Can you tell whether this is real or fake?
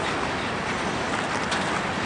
real